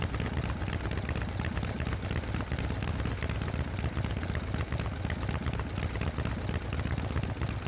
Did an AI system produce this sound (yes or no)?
no